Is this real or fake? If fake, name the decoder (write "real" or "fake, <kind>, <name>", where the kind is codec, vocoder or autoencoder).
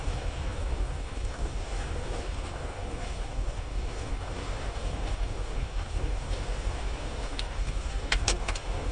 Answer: fake, codec, DAC